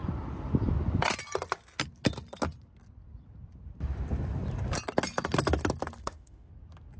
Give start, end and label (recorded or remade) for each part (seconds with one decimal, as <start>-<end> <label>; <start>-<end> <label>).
0.0-6.0 recorded; 6.0-6.5 remade; 6.5-7.0 recorded